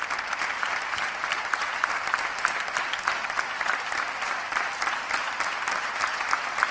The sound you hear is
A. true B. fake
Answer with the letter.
A